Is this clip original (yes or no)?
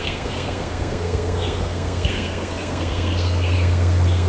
no